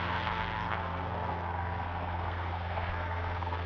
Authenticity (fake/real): fake